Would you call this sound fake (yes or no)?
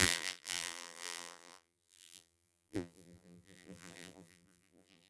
yes